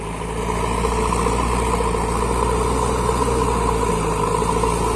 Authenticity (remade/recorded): recorded